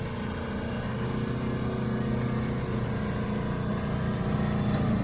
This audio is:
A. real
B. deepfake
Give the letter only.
A